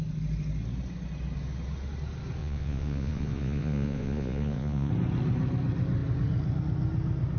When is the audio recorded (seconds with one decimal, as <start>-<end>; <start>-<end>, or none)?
0.0-2.4; 4.9-7.4